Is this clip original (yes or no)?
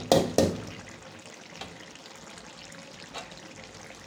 yes